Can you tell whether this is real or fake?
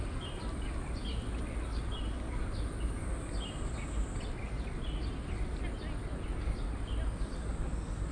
real